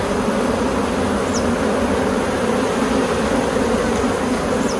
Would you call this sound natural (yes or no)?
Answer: yes